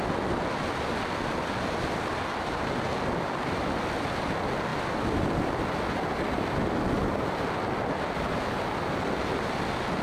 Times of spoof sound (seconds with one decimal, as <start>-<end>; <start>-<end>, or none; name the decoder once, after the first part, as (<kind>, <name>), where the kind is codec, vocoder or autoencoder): none